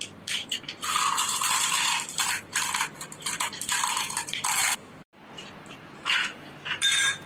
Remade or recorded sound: remade